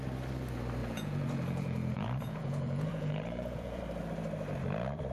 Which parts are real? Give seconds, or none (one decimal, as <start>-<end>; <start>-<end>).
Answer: 0.0-0.8; 3.8-5.1